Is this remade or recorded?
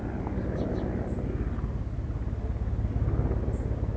recorded